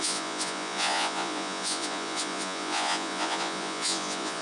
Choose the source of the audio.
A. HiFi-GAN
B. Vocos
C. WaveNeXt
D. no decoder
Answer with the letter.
B